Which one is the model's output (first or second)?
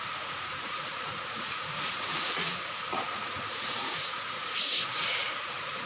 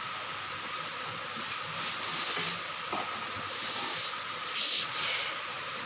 first